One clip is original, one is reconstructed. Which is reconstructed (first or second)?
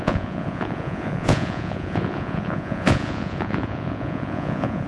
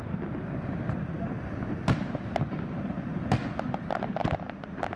first